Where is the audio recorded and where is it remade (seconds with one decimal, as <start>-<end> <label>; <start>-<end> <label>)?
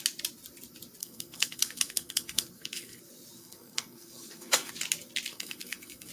0.0-1.0 recorded; 1.0-3.0 remade; 3.0-3.4 recorded; 3.4-4.7 remade; 4.7-5.3 recorded; 5.3-6.1 remade